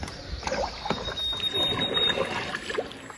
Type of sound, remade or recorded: recorded